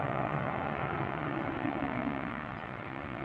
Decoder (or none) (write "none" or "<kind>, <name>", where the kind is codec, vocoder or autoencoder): vocoder, WaveNeXt